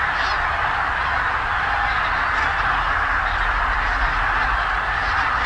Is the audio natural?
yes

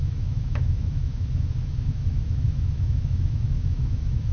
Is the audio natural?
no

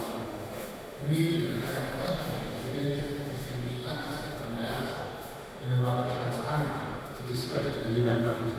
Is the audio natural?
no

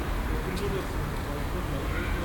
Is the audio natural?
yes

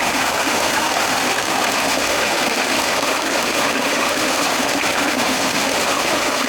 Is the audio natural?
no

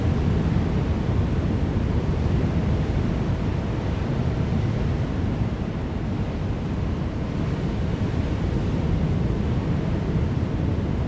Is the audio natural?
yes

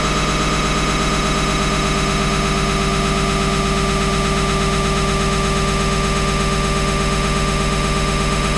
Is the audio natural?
no